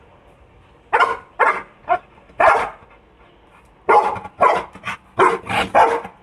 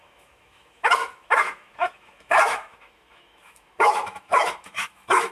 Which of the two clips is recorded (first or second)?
first